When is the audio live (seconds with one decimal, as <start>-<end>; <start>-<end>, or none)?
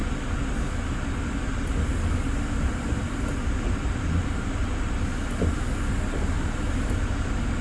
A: 0.0-7.6